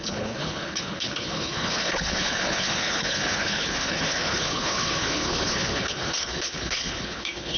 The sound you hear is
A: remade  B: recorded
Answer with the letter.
A